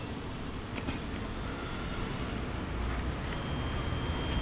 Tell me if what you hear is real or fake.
real